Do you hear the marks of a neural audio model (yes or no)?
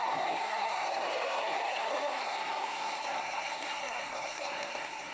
yes